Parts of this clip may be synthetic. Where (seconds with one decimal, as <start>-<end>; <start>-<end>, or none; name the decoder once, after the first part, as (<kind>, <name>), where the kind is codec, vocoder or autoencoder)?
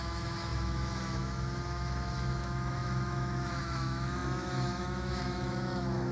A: 0.0-6.1 (autoencoder, DAC-VAE)